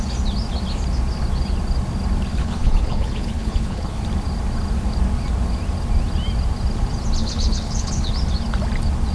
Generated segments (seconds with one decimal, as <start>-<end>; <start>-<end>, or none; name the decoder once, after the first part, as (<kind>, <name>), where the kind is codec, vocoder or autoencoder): 2.3-4.0 (codec, HILCodec); 7.2-8.1